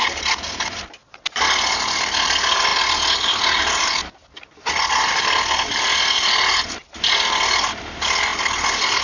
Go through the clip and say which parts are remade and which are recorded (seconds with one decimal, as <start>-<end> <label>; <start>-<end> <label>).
0.0-9.0 recorded